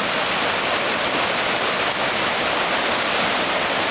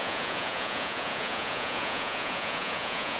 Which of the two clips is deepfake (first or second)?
second